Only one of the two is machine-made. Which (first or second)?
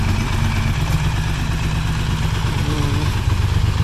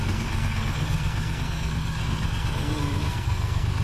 second